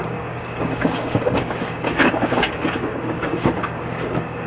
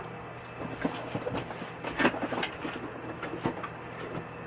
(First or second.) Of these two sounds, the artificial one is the first